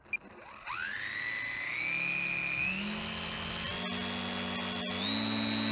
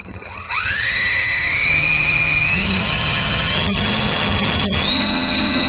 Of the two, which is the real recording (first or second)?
first